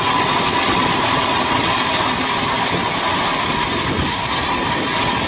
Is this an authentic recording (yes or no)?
yes